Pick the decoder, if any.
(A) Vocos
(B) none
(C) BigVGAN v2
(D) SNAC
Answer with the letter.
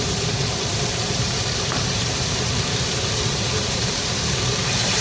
C